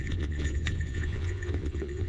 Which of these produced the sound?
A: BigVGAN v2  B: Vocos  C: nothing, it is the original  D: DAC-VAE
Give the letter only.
B